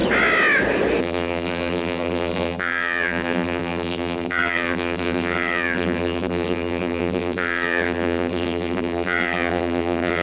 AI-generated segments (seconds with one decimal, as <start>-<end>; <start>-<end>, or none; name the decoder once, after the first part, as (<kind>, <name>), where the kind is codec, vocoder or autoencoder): 1.0-10.2 (vocoder, BigVGAN v2)